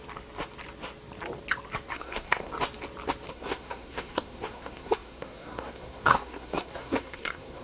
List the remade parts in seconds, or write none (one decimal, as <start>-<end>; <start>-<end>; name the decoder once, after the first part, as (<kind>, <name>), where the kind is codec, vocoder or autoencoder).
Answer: 1.9-2.5 (codec, SNAC); 3.3-7.6